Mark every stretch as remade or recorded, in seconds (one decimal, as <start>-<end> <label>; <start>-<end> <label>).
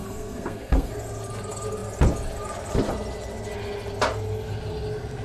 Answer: 0.0-0.9 remade; 0.9-5.2 recorded